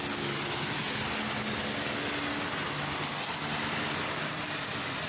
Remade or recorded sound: recorded